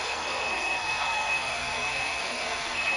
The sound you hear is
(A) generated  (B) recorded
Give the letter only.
A